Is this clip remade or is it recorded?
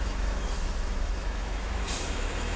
remade